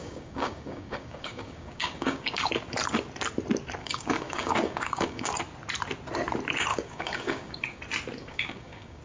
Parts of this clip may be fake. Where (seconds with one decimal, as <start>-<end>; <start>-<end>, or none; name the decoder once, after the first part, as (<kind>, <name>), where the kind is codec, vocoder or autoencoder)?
0.0-2.5 (codec, DAC); 3.8-5.3; 6.7-7.8; 8.2-9.0

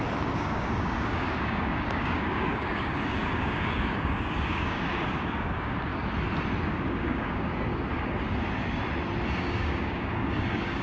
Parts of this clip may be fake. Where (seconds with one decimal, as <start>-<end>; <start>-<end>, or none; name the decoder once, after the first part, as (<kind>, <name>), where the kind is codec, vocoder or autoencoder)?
0.0-5.9 (codec, DAC); 6.6-7.5; 9.3-10.8

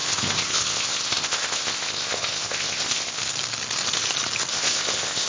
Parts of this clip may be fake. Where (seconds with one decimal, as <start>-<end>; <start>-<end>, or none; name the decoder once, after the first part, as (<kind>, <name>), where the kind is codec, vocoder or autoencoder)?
0.0-3.2 (codec, ZipCodec); 4.5-5.3

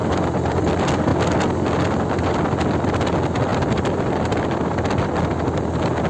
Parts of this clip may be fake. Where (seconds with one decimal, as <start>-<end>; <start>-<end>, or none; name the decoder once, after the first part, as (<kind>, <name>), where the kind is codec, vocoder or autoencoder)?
0.0-0.7 (vocoder, BigVGAN v2); 3.5-4.0

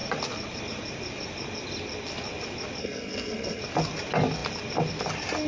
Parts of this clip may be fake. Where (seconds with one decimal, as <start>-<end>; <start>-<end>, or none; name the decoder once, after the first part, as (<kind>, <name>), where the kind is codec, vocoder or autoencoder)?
2.8-3.6 (codec, SNAC)

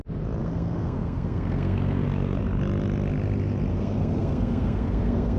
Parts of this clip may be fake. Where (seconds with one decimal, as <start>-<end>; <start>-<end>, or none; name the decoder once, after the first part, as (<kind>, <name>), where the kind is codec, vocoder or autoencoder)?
0.4-2.4 (codec, SNAC); 3.7-5.4

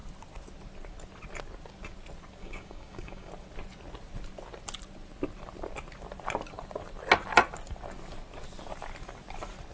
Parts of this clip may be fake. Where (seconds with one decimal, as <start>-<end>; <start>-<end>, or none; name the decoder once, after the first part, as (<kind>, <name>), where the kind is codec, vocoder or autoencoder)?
2.4-3.3 (codec, DAC)